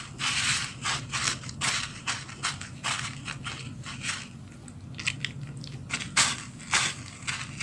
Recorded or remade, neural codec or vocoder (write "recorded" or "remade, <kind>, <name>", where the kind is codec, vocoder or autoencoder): recorded